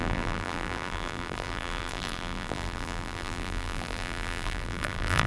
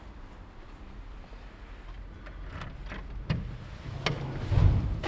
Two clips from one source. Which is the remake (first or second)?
first